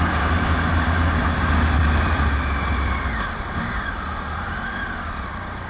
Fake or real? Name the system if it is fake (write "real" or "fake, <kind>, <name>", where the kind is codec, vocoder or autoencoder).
real